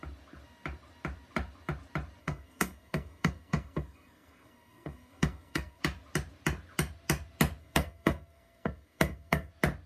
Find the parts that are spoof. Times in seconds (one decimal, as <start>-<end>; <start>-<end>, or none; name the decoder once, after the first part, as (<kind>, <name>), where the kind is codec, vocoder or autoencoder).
2.2-5.8 (codec, SNAC); 7.6-9.5